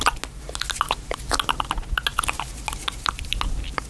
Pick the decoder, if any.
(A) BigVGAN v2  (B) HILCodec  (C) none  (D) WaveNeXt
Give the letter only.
C